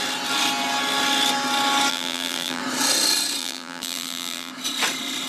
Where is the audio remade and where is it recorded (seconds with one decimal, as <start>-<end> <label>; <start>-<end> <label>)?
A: 0.0-1.9 recorded; 1.9-2.6 remade; 2.6-3.4 recorded; 3.4-4.5 remade; 4.5-5.3 recorded